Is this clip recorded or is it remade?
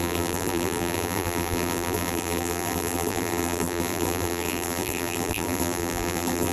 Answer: remade